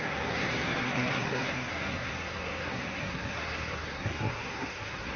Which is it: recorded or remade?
remade